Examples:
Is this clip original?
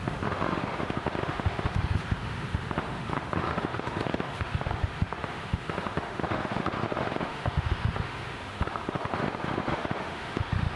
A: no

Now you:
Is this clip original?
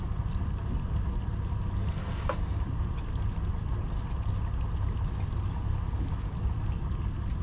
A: yes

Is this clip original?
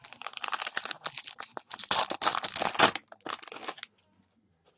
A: yes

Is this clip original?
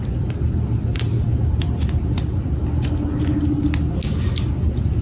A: yes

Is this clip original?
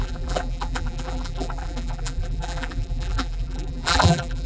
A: no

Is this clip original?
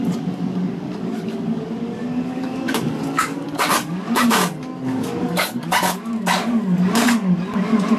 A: no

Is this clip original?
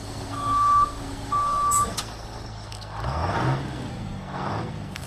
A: no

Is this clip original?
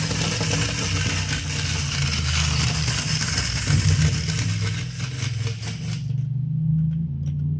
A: yes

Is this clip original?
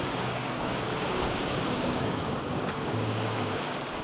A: no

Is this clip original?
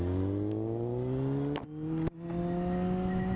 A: yes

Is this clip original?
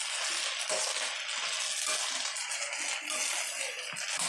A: yes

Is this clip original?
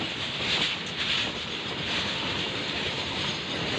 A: yes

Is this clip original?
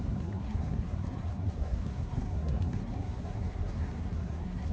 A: no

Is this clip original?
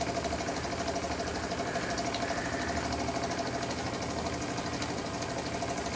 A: yes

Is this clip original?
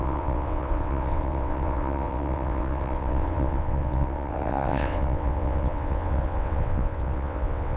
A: no